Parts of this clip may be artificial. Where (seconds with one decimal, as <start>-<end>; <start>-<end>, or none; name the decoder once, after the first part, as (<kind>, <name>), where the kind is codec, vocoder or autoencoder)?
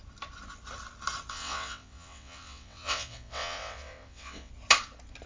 1.3-4.5 (vocoder, WaveNeXt)